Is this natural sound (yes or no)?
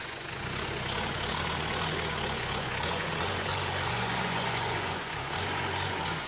no